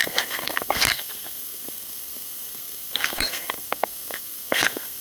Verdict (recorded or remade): remade